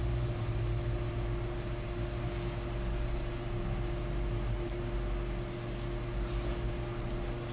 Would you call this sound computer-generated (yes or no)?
no